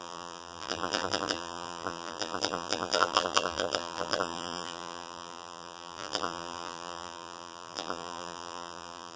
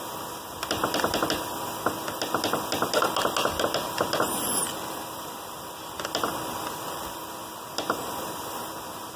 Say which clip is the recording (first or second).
second